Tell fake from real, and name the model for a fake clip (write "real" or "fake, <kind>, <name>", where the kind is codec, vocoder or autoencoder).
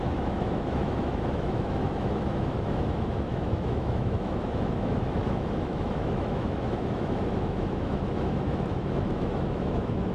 fake, autoencoder, DAC-VAE